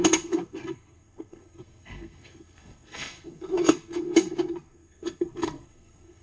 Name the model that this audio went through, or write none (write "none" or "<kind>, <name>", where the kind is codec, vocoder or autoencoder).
codec, SNAC